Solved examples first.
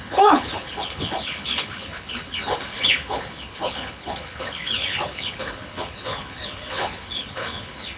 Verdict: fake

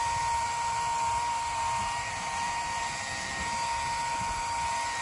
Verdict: real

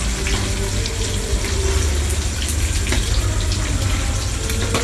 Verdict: real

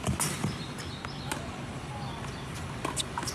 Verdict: real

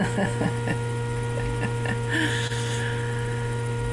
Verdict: real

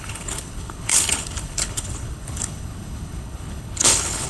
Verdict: fake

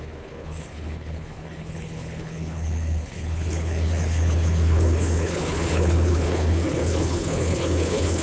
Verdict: fake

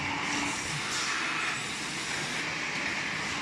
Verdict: real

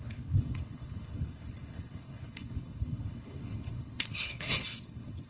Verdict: fake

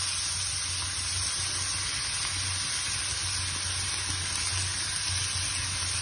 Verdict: real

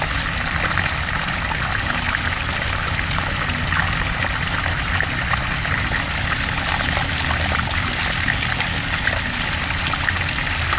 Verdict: real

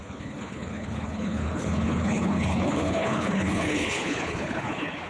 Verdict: fake